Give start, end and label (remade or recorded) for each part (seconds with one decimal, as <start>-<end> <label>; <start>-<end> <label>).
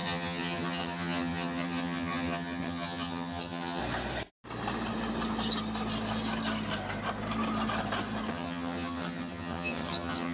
0.0-3.8 remade; 3.8-8.3 recorded; 8.3-10.3 remade